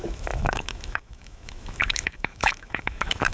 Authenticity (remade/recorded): remade